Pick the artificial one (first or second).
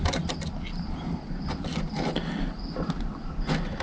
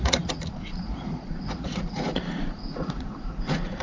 second